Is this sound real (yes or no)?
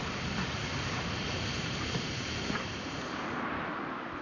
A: no